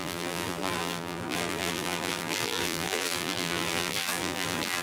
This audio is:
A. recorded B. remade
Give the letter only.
B